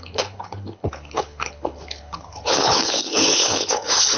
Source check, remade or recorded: remade